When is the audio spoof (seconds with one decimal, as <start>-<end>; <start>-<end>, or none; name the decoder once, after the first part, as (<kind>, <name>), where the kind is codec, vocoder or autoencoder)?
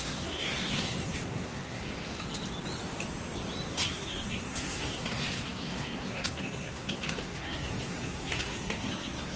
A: 0.0-1.8 (codec, SNAC); 3.7-9.4